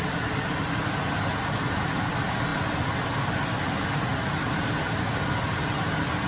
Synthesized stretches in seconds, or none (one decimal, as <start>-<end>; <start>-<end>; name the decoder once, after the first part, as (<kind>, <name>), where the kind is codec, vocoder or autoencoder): none